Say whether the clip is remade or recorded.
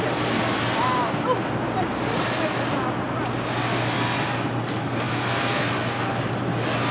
recorded